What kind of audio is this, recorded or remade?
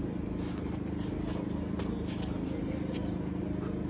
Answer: recorded